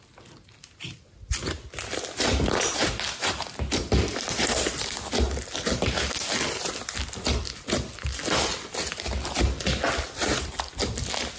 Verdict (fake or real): real